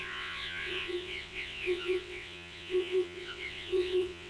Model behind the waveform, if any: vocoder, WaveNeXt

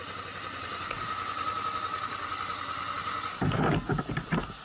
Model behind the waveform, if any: none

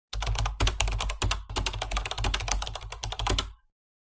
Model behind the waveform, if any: none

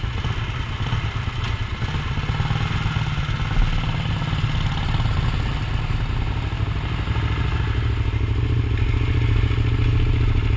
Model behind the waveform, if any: none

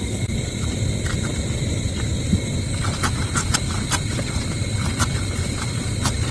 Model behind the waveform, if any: none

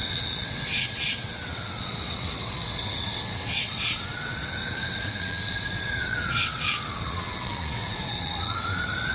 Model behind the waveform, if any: vocoder, WaveNeXt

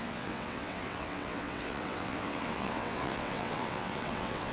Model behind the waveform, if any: vocoder, WaveNeXt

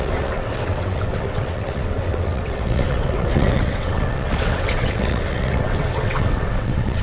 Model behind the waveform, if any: vocoder, WaveNeXt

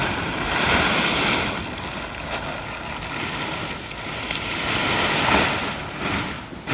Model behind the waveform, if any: none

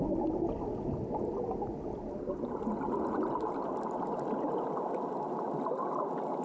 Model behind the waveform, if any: none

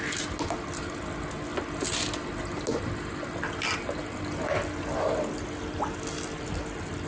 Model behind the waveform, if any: none